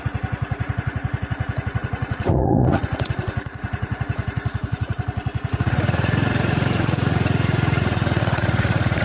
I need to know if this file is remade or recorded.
remade